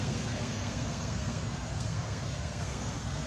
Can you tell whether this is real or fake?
fake